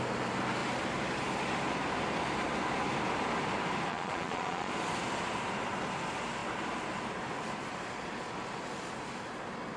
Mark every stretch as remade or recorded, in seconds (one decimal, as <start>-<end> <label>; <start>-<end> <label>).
0.0-3.9 recorded; 3.9-4.7 remade; 4.7-9.8 recorded